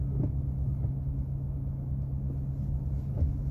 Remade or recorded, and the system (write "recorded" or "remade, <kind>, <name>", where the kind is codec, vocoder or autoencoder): recorded